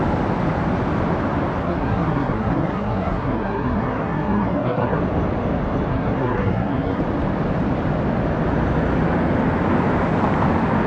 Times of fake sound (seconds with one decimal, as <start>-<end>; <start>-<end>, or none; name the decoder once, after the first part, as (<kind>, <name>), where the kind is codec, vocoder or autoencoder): 1.6-5.0 (codec, SNAC); 5.9-7.0